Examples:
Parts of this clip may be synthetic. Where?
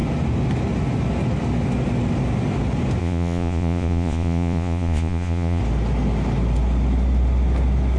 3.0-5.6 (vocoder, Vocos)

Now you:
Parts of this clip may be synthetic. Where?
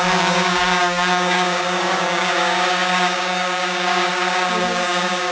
0.0-5.3 (codec, DAC)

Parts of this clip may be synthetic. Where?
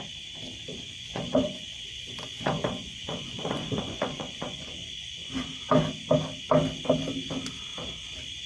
0.7-5.3 (vocoder, Vocos)